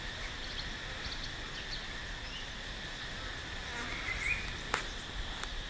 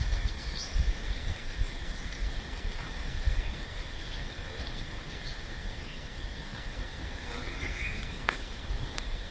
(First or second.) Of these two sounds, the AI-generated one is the second